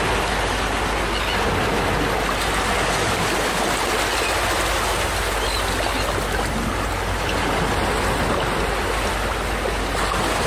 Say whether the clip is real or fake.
real